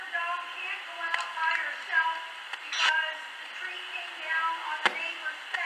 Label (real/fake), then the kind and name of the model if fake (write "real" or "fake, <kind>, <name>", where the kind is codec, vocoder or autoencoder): real